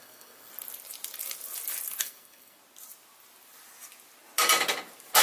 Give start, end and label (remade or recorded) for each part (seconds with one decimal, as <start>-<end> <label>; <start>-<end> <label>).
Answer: 0.0-0.5 remade; 0.5-2.0 recorded; 2.0-2.6 remade; 2.6-5.2 recorded